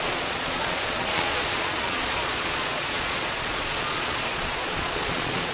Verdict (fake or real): fake